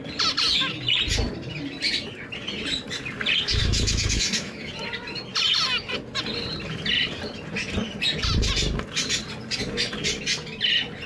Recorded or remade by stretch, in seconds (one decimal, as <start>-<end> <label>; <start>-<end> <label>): 0.0-3.6 recorded; 3.6-4.7 remade; 4.7-11.1 recorded